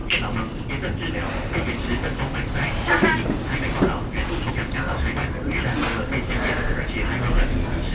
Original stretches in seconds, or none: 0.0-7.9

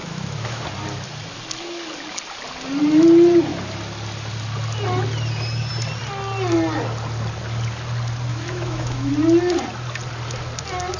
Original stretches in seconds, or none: 0.6-8.3; 9.1-11.0

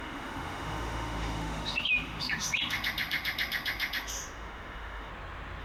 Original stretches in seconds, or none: 5.1-5.6

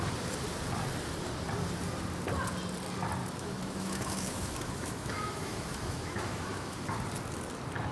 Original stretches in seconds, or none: 0.0-3.2; 6.8-7.9

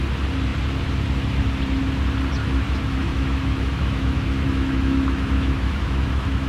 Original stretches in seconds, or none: 0.0-2.4